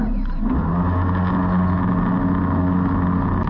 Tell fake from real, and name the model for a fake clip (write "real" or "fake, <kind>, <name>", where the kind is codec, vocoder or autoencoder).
real